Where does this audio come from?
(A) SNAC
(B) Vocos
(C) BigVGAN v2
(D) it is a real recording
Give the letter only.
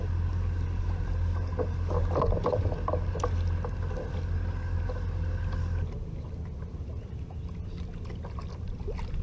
D